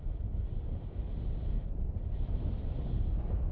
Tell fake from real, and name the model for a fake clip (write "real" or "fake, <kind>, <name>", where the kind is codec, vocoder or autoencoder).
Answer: real